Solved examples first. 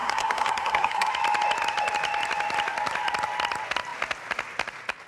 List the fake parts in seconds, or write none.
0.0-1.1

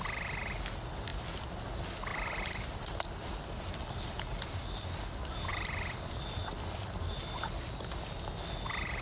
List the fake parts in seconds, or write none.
2.1-3.7; 5.5-6.4

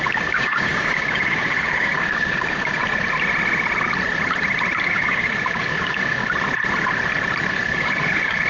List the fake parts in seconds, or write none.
0.0-2.8; 4.8-6.2; 7.5-8.5

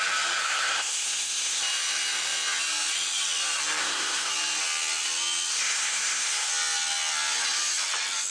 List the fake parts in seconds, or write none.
0.4-1.6; 3.8-4.3; 5.5-6.5

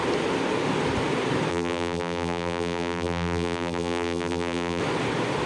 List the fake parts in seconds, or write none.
1.5-4.8